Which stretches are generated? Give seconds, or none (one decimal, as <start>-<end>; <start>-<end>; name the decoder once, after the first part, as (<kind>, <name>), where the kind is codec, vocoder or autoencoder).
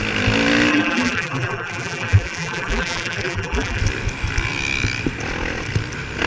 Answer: 0.7-3.8 (vocoder, BigVGAN v2)